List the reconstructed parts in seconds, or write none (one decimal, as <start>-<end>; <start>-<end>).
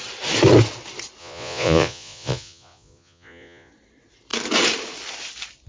1.2-3.7